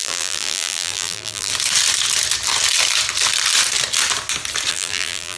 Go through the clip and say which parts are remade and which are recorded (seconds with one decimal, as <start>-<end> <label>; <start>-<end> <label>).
0.0-1.5 remade; 1.5-4.7 recorded; 4.7-5.4 remade